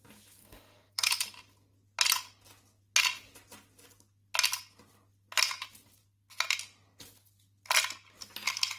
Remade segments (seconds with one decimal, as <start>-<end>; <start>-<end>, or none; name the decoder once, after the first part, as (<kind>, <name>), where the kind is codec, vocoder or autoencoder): 0.4-1.1 (codec, SNAC)